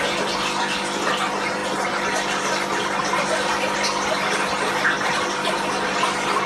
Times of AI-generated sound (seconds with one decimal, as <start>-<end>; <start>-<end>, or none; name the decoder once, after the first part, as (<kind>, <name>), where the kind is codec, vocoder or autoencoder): none